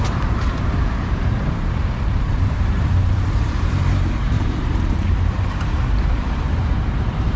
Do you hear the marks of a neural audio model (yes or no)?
yes